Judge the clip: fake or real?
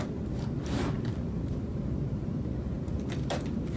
fake